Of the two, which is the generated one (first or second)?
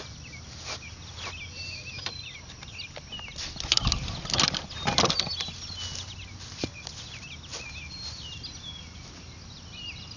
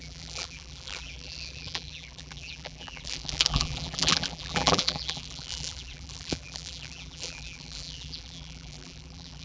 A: second